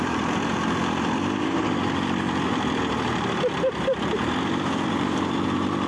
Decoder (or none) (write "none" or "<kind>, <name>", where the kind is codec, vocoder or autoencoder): vocoder, BigVGAN v2